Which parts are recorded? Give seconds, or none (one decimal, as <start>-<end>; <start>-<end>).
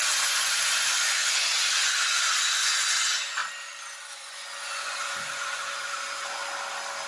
3.4-4.1; 6.4-7.1